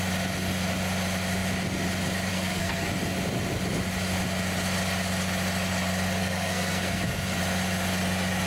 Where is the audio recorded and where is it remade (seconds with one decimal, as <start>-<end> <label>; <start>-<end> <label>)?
0.0-2.3 recorded; 2.3-2.9 remade; 2.9-6.2 recorded; 6.2-7.4 remade; 7.4-8.5 recorded